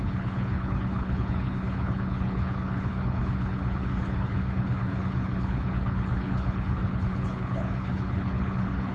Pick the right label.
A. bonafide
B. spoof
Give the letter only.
B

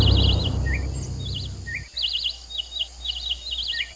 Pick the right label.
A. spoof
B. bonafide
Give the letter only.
B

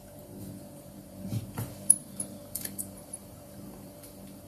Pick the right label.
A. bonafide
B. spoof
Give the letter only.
B